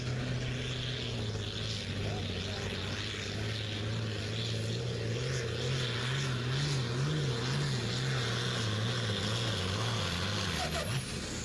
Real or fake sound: real